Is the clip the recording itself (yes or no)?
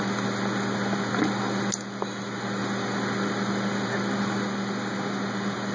yes